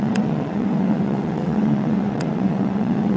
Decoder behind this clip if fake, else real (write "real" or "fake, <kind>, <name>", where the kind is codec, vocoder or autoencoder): fake, vocoder, WaveNeXt